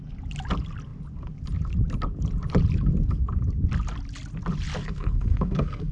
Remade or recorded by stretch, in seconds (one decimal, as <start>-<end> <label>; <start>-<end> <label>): 0.0-4.8 recorded; 4.8-5.9 remade